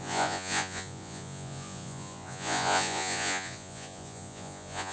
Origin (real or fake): fake